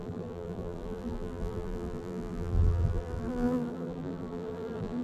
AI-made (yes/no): yes